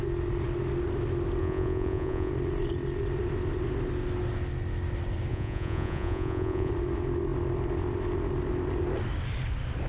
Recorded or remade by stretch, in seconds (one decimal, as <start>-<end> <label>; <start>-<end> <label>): 0.0-1.4 recorded; 1.4-2.3 remade; 2.3-5.3 recorded; 5.3-6.7 remade; 6.7-9.9 recorded